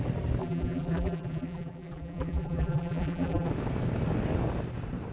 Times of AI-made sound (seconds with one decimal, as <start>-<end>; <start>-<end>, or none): 0.4-3.5